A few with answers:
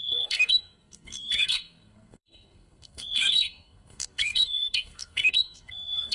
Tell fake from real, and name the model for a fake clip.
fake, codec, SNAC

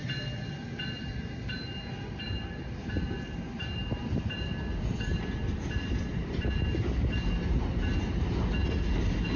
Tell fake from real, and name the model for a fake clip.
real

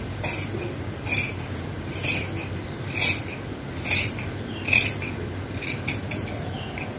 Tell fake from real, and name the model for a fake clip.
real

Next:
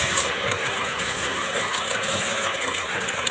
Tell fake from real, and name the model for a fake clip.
fake, codec, SNAC